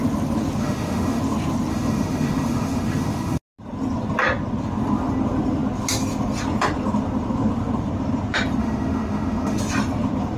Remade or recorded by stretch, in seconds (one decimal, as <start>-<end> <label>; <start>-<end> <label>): 0.0-0.6 recorded; 0.6-1.2 remade; 1.2-1.7 recorded; 1.7-3.4 remade; 3.4-8.6 recorded; 8.6-9.6 remade; 9.6-10.4 recorded